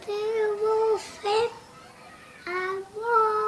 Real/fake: real